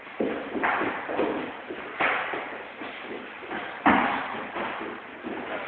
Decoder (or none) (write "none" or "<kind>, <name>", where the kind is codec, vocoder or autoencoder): none